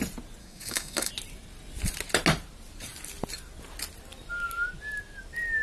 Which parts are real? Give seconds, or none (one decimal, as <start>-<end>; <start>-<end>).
0.0-0.4; 1.1-5.6